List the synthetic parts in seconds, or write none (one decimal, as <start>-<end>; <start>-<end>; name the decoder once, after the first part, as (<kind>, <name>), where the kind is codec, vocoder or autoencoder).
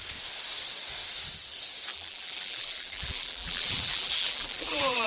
1.9-5.1 (vocoder, BigVGAN v2)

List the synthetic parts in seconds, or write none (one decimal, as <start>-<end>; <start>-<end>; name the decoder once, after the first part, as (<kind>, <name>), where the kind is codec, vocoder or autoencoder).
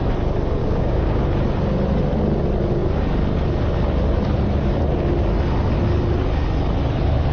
0.6-1.2 (codec, DAC)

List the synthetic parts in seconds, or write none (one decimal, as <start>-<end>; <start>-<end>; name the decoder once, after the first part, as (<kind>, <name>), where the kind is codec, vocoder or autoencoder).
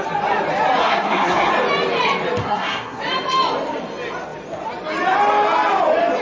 0.8-1.5 (codec, SNAC); 2.4-3.0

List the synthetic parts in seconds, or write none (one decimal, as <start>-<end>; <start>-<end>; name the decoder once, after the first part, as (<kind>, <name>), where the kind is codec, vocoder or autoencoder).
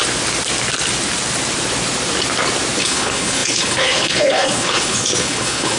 2.8-5.8 (codec, HILCodec)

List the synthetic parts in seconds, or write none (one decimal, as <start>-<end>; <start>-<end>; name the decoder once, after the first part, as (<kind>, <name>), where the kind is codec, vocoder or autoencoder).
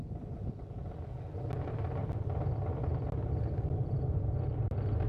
none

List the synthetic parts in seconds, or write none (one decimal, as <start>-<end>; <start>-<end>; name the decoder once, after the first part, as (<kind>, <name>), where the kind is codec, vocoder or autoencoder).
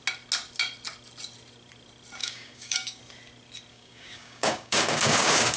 2.2-3.0 (codec, DAC); 3.7-5.6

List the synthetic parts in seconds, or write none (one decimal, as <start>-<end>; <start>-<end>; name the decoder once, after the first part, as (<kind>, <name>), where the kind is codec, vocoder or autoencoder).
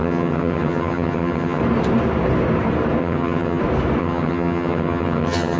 0.0-1.6 (vocoder, HiFi-GAN); 3.0-3.6; 4.0-5.6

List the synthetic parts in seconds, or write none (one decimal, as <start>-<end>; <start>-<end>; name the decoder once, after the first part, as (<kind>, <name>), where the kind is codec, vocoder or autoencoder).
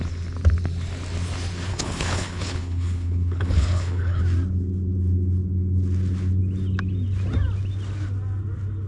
1.7-4.2 (codec, HILCodec)